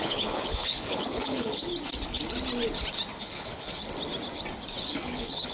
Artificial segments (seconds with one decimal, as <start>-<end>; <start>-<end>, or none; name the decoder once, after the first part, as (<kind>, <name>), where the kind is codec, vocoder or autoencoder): 0.0-1.7 (codec, HILCodec); 3.2-3.8; 4.8-5.5